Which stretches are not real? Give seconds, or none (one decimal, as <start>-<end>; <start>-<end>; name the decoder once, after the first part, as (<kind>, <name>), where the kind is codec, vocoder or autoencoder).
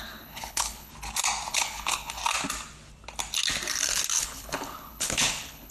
0.0-0.9 (codec, HILCodec); 1.5-2.2; 4.2-5.7